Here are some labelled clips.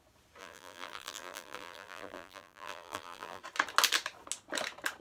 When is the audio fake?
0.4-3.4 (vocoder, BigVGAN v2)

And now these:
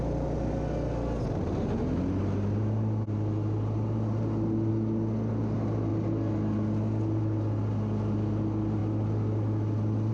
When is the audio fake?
none

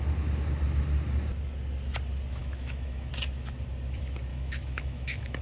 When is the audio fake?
2.4-3.1 (autoencoder, DAC-VAE); 4.3-5.4

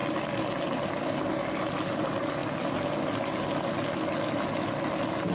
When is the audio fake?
none

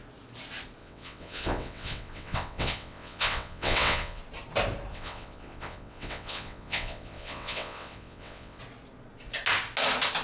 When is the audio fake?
0.8-4.2 (vocoder, WaveNeXt); 4.9-8.6

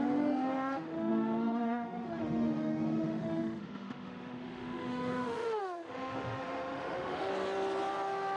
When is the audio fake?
0.0-7.3 (autoencoder, DAC-VAE)